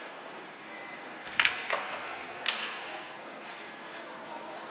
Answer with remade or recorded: remade